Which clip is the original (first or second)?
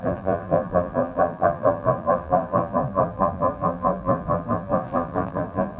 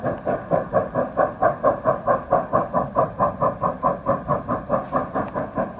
second